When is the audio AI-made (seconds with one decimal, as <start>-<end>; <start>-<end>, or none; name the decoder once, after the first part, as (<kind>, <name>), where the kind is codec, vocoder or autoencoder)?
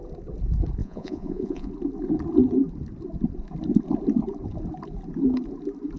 0.8-1.7 (vocoder, Vocos)